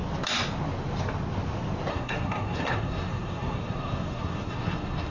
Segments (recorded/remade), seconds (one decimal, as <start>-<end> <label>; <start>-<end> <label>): 0.0-1.9 recorded; 1.9-5.1 remade